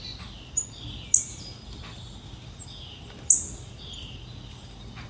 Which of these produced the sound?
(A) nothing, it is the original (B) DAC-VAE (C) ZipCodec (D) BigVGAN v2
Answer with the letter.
A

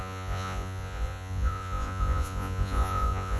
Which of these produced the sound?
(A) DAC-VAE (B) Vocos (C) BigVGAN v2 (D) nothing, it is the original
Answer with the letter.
B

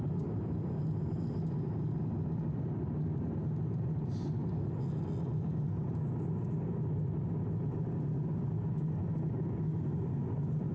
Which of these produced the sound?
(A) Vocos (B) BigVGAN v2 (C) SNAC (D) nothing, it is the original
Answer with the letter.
D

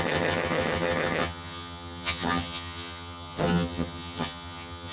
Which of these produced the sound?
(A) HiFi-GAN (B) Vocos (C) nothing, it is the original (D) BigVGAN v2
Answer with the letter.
A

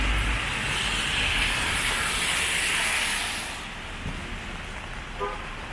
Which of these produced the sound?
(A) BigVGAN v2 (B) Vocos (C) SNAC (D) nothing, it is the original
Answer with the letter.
D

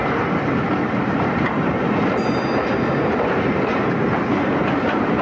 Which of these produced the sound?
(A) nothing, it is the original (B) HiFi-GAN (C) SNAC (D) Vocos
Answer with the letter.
A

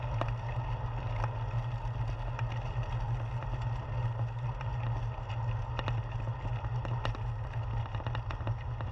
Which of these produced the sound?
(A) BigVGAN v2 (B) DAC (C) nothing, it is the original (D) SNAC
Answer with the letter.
C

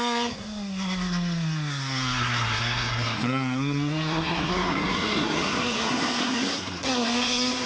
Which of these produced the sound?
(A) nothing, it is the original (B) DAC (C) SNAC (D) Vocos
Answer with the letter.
C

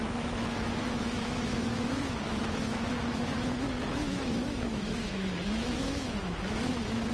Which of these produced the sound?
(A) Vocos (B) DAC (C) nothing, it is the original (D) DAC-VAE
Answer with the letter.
D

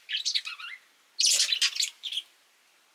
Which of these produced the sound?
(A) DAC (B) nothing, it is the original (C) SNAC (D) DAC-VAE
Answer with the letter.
B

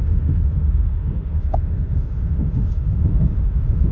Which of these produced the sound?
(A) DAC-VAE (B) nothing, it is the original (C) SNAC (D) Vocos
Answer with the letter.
A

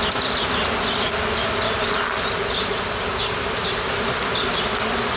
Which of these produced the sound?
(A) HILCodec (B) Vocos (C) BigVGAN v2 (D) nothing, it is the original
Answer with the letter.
D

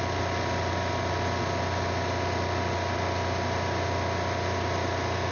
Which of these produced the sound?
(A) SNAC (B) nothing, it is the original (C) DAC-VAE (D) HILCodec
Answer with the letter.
B